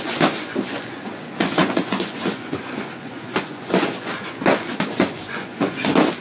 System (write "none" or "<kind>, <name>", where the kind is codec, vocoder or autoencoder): vocoder, Vocos